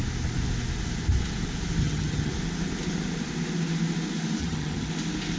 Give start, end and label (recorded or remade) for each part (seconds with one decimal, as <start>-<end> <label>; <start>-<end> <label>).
0.0-1.8 recorded; 1.8-2.3 remade; 2.3-4.4 recorded; 4.4-4.9 remade; 4.9-5.4 recorded